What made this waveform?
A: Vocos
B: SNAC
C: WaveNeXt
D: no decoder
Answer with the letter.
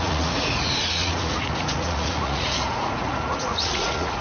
A